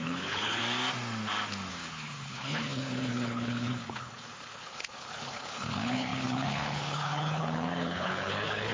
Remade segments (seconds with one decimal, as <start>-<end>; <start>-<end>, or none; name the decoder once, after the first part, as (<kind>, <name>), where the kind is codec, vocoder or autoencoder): 0.0-0.6 (codec, HILCodec); 1.7-8.7